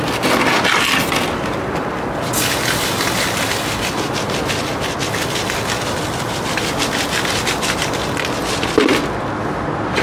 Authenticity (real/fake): real